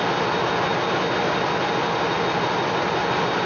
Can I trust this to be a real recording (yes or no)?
yes